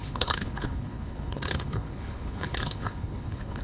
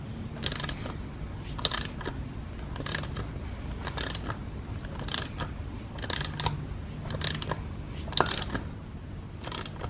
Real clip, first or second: second